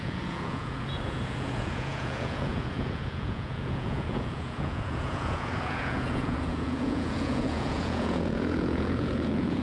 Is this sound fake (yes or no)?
yes